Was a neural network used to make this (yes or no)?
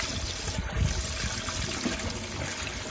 no